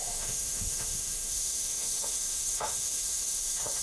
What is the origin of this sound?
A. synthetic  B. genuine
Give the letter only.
A